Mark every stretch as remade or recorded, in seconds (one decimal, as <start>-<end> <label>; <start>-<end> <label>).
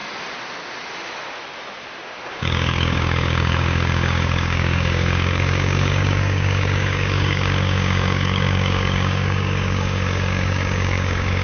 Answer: 0.0-2.3 recorded; 2.3-11.4 remade